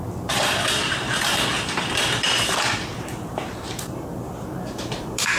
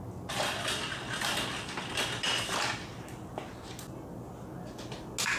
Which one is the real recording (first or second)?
second